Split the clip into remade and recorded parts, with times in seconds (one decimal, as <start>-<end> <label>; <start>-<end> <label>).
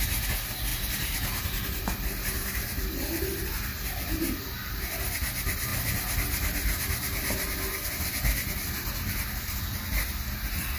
0.0-0.7 recorded; 0.7-3.5 remade; 3.5-10.8 recorded